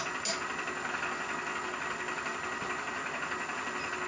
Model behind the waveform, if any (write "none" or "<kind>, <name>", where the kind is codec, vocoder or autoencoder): none